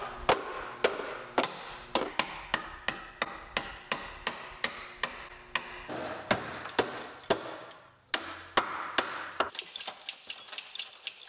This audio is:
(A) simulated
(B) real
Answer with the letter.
B